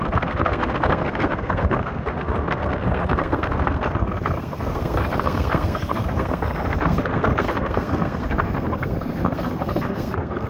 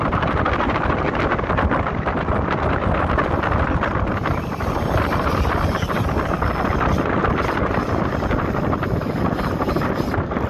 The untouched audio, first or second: second